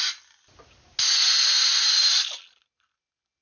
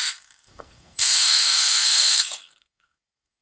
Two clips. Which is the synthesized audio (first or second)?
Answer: second